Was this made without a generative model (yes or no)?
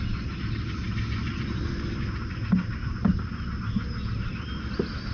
yes